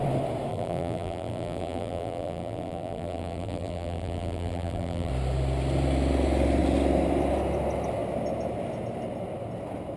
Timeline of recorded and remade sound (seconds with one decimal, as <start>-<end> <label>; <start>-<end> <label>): 0.0-0.5 recorded; 0.5-5.1 remade; 5.1-10.0 recorded